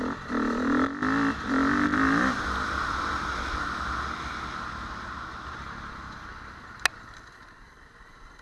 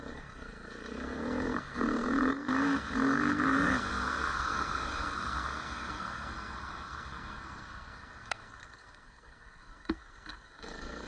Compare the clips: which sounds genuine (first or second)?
first